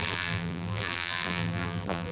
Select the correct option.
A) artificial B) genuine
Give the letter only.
A